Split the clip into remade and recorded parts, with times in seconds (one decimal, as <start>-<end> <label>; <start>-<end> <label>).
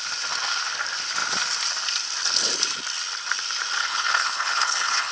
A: 0.0-3.8 recorded; 3.8-5.1 remade